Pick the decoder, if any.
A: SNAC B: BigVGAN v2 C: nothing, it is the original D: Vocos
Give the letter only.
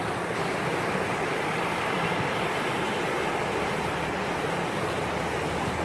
C